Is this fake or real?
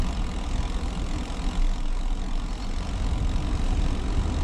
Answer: real